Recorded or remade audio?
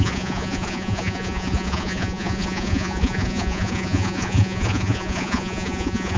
remade